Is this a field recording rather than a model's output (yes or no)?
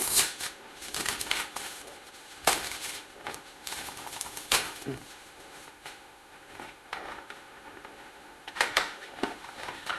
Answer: no